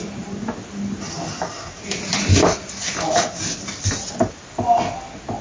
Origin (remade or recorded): recorded